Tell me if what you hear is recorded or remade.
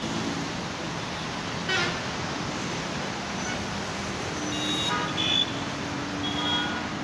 recorded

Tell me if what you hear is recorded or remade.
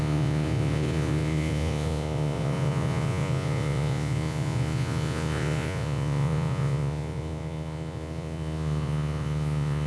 remade